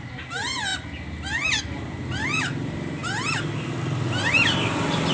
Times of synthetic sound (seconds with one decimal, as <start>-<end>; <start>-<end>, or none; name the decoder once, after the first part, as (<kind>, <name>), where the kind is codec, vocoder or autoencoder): none